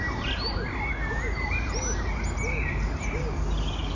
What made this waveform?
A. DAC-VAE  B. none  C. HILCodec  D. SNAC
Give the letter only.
B